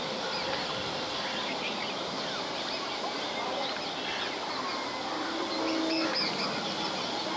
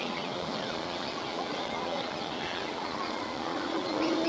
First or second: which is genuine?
first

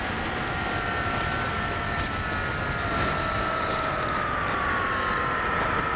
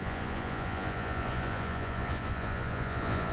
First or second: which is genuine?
first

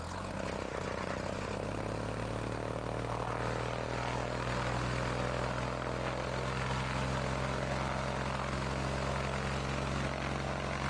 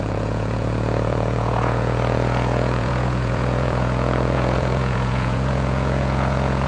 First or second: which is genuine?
first